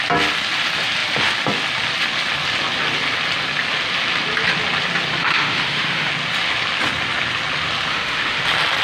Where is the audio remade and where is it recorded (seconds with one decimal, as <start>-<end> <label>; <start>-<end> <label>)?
0.0-5.2 recorded; 5.2-6.1 remade; 6.1-7.9 recorded; 7.9-8.4 remade; 8.4-8.8 recorded